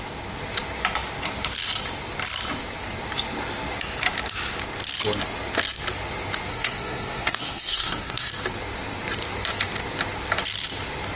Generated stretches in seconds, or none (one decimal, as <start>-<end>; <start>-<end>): 6.5-8.3